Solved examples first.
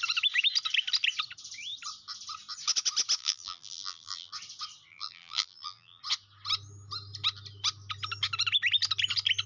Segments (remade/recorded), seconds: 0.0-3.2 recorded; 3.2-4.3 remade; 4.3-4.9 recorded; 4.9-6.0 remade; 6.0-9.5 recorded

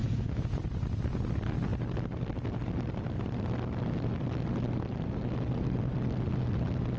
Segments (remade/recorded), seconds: 0.0-0.6 remade; 0.6-7.0 recorded

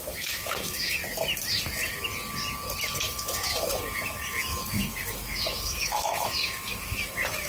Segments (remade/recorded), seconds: 0.0-1.0 remade; 1.0-3.0 recorded; 3.0-7.5 remade

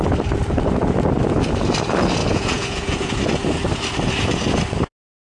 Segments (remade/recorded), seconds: 0.0-2.2 recorded; 2.2-3.2 remade; 3.2-5.4 recorded

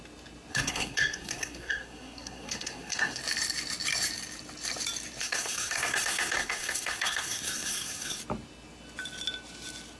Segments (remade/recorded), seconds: 0.0-0.5 recorded; 0.5-3.2 remade; 3.2-5.2 recorded; 5.2-8.2 remade; 8.2-10.0 recorded

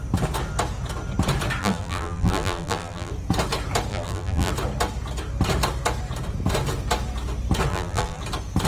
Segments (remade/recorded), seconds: 0.0-1.6 recorded; 1.6-3.1 remade; 3.1-3.9 recorded; 3.9-4.5 remade; 4.5-7.7 recorded; 7.7-8.2 remade; 8.2-8.7 recorded